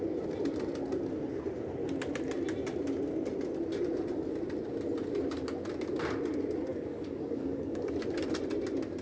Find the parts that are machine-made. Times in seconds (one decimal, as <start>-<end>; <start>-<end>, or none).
6.7-8.0